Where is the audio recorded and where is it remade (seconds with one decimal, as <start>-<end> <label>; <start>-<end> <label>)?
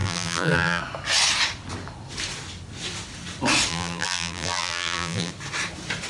0.0-0.8 remade; 0.8-3.7 recorded; 3.7-5.3 remade; 5.3-6.1 recorded